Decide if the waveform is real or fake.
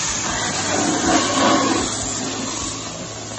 real